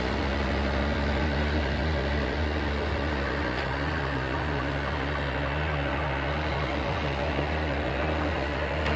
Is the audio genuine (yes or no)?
no